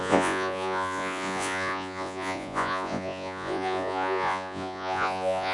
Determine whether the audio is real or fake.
fake